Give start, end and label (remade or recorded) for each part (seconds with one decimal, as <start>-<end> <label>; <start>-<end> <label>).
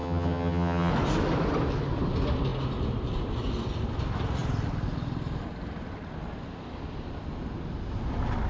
0.0-0.9 remade; 0.9-8.5 recorded